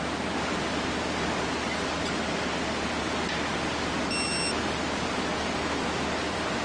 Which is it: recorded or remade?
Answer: recorded